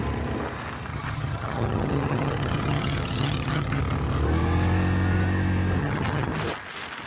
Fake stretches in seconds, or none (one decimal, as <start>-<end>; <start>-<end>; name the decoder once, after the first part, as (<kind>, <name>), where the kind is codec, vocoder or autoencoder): 0.9-3.8 (vocoder, HiFi-GAN); 5.8-6.3